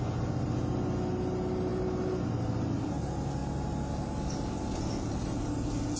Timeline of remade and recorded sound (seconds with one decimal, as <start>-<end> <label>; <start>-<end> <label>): 0.0-6.0 recorded